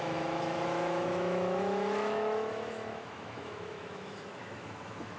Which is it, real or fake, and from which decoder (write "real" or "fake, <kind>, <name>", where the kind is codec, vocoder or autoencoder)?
fake, autoencoder, DAC-VAE